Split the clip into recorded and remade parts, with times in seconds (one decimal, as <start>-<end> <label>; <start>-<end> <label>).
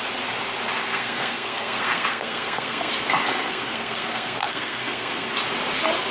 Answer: 0.0-0.8 recorded; 0.8-2.9 remade; 2.9-3.3 recorded; 3.3-5.3 remade; 5.3-6.1 recorded